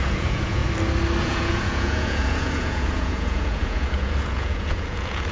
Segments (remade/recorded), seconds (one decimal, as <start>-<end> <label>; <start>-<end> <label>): 0.0-0.6 remade; 0.6-1.2 recorded; 1.2-5.3 remade